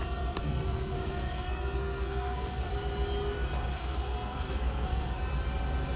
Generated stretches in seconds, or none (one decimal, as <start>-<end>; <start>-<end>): 0.4-2.7; 3.7-5.2